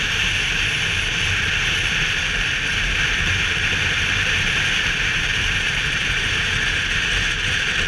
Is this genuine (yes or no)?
no